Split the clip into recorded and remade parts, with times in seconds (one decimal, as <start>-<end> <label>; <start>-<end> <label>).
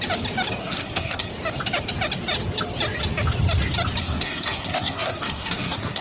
0.0-0.6 recorded; 0.6-1.3 remade; 1.3-4.0 recorded; 4.0-6.0 remade